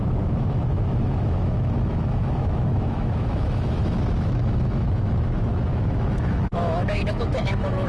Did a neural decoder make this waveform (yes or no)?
yes